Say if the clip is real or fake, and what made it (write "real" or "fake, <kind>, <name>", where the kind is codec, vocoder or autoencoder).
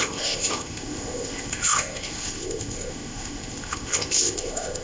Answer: fake, codec, ZipCodec